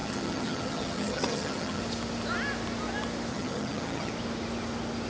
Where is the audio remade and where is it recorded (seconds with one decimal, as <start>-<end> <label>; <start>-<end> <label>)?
0.0-1.8 remade; 1.8-3.3 recorded; 3.3-4.1 remade; 4.1-5.1 recorded